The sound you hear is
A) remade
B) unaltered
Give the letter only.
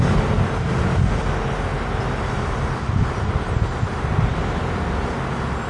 B